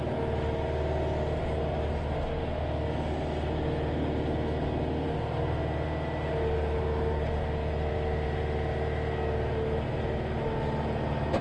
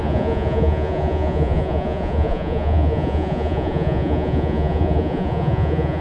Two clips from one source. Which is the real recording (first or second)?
first